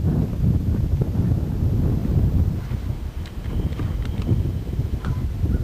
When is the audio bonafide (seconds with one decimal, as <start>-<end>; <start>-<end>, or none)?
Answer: 0.0-5.6